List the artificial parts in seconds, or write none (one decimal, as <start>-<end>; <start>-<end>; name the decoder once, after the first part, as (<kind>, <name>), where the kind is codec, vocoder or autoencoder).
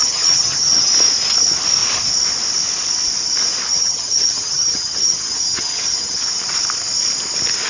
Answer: 0.0-0.9 (vocoder, HiFi-GAN); 3.7-6.3